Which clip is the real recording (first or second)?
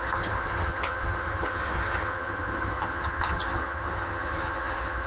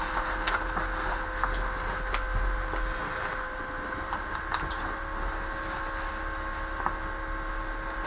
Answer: second